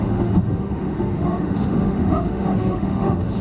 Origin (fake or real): fake